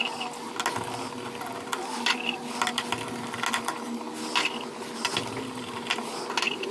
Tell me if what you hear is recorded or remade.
recorded